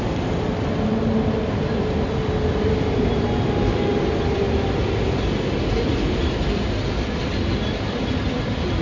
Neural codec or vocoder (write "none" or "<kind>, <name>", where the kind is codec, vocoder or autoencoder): none